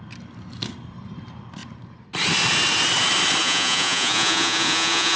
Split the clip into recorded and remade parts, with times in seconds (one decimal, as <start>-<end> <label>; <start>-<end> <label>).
0.0-3.4 recorded; 3.4-5.2 remade